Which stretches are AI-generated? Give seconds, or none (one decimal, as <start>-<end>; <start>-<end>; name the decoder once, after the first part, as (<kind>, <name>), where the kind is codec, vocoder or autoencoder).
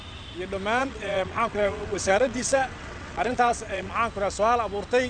0.8-3.9 (vocoder, WaveNeXt)